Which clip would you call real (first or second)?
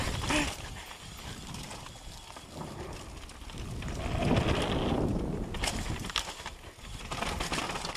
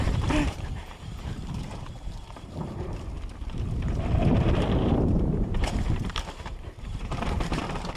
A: first